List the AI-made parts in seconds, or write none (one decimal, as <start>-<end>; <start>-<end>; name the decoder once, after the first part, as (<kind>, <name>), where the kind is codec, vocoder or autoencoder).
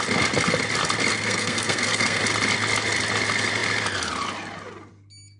1.1-2.2 (codec, SNAC)